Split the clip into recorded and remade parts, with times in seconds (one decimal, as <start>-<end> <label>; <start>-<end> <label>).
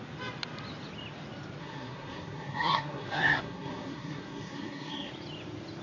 0.0-1.6 recorded; 1.6-5.1 remade; 5.1-5.8 recorded